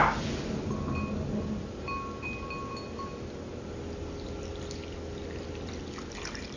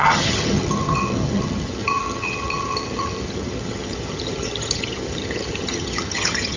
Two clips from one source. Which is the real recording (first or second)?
first